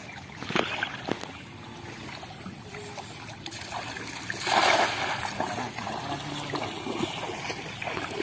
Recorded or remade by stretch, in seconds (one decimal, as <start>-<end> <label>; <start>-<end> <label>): 0.0-8.2 recorded